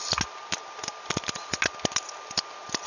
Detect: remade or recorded recorded